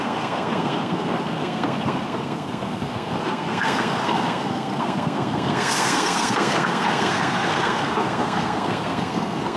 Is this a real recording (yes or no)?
no